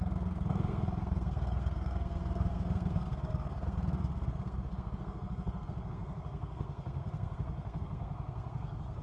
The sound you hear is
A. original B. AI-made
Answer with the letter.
B